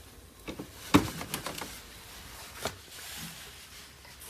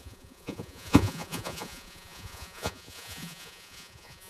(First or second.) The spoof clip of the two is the second